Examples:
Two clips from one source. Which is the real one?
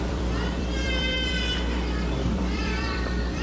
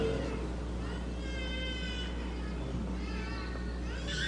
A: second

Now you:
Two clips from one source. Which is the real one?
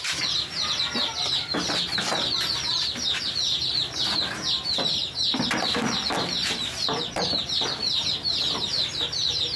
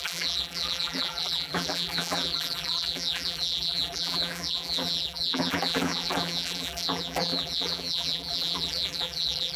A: first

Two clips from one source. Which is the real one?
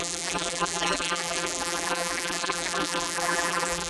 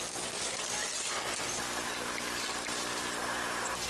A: second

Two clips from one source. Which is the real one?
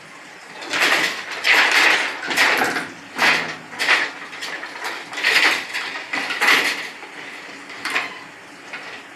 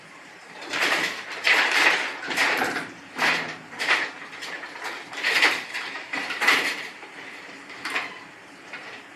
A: first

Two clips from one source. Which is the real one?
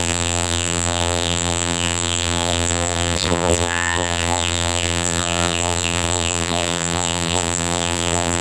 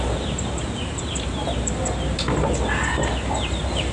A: second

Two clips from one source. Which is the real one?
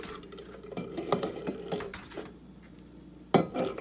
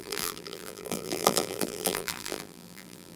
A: first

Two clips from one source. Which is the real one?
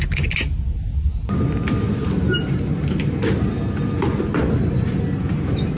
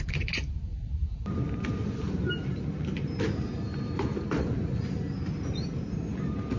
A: first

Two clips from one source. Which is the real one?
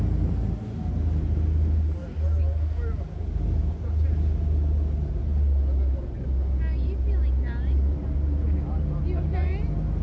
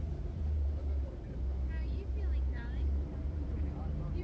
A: first